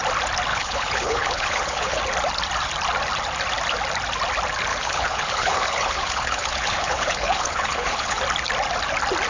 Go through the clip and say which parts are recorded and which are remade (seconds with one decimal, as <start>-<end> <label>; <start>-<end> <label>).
0.0-0.5 recorded; 0.5-2.0 remade; 2.0-4.7 recorded; 4.7-8.2 remade; 8.2-9.3 recorded